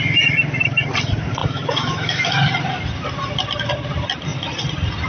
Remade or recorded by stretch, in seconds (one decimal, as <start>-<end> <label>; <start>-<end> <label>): 0.0-1.4 recorded; 1.4-2.3 remade; 2.3-5.1 recorded